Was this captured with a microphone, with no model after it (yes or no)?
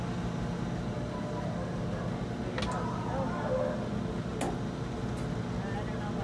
yes